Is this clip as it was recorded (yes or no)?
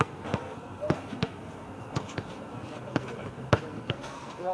no